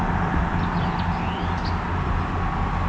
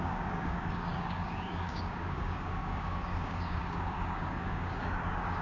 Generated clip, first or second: second